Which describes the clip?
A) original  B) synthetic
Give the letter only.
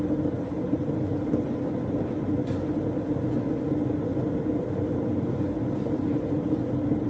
A